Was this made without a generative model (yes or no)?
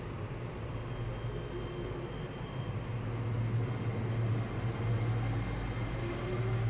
yes